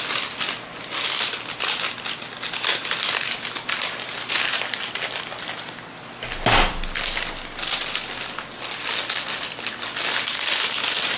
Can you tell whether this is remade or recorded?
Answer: recorded